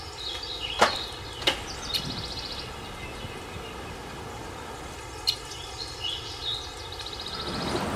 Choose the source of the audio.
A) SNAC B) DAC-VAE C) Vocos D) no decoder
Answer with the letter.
D